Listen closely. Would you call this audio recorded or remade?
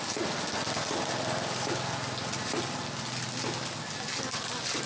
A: recorded